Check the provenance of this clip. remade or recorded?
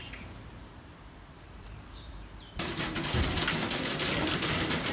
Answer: remade